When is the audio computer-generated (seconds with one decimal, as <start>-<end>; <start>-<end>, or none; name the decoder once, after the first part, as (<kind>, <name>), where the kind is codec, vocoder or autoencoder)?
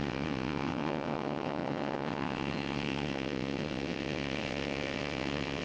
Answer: 0.0-5.6 (vocoder, WaveNeXt)